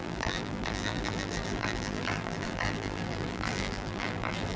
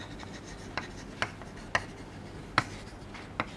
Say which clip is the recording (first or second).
second